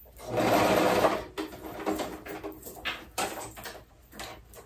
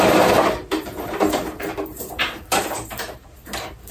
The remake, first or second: second